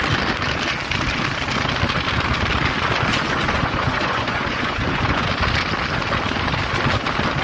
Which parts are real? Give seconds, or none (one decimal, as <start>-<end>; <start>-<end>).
0.0-3.1; 5.3-7.4